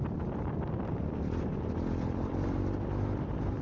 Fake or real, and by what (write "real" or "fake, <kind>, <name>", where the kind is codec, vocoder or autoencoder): real